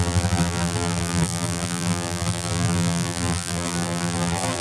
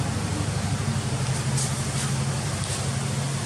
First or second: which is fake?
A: first